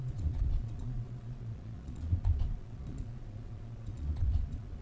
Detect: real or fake fake